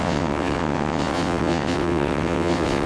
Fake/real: fake